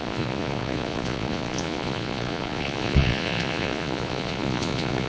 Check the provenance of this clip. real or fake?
fake